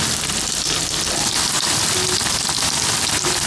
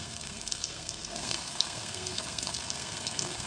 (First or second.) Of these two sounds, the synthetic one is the second